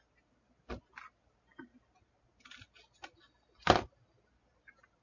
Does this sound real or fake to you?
real